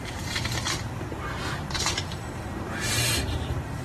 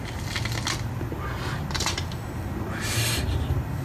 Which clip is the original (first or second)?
second